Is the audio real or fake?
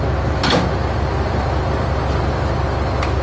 real